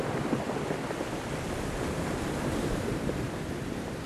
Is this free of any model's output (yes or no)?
yes